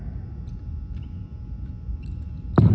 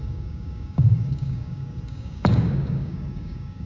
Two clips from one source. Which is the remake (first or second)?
second